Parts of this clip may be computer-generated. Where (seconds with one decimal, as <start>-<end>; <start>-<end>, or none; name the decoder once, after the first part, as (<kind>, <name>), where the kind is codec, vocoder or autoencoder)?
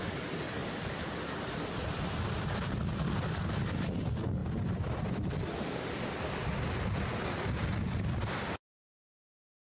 0.6-1.1 (vocoder, BigVGAN v2); 4.4-6.3; 8.4-9.0